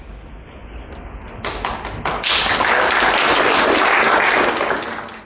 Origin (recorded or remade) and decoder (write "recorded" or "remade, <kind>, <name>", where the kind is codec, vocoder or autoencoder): recorded